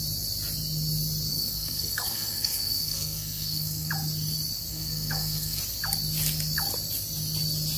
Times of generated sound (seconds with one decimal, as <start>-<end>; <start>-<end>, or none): 1.3-3.9; 4.7-5.6